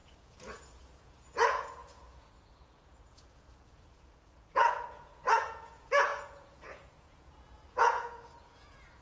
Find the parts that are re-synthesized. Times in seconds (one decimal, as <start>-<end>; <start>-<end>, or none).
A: 0.0-9.0